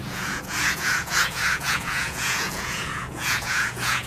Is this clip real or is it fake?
fake